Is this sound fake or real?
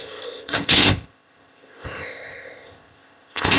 fake